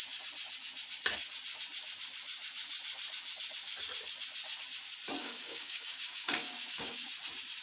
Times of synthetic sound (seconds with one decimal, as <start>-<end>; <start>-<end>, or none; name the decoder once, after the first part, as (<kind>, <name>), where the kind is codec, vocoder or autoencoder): 5.2-7.1 (codec, DAC)